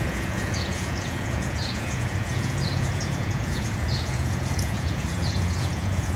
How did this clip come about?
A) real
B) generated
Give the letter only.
B